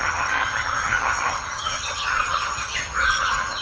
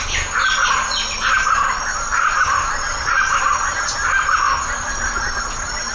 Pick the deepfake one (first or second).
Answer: first